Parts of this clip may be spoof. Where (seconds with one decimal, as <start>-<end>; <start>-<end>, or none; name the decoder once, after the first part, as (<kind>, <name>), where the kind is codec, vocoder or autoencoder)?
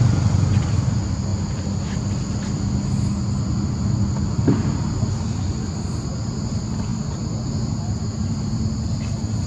none